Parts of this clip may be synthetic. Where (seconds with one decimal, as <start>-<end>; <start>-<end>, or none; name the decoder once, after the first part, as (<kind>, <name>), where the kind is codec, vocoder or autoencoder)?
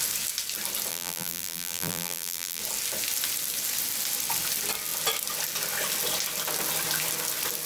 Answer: 0.9-2.6 (vocoder, BigVGAN v2)